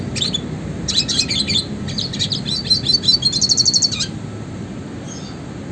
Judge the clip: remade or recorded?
recorded